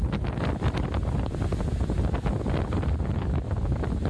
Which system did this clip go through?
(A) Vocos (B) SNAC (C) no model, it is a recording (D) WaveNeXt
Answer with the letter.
C